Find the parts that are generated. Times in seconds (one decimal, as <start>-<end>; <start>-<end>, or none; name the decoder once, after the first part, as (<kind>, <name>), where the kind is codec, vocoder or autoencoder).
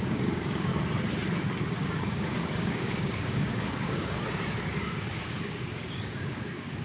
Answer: 0.0-0.7 (codec, DAC); 1.8-6.8